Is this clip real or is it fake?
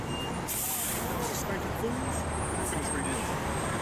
real